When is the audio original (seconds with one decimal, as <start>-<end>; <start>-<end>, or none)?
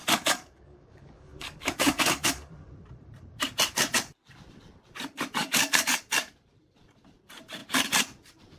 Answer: 2.5-5.4; 6.0-8.6